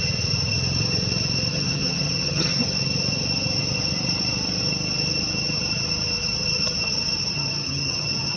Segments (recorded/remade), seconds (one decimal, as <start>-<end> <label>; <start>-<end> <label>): 0.0-1.5 recorded; 1.5-2.5 remade; 2.5-7.2 recorded; 7.2-8.4 remade